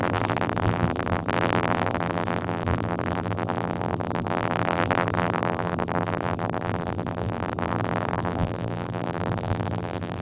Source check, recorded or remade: remade